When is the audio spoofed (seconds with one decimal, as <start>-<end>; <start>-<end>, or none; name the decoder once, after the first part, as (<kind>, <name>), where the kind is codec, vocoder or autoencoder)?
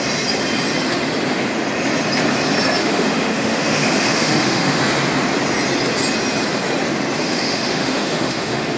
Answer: 2.8-4.8 (autoencoder, DAC-VAE); 7.2-8.8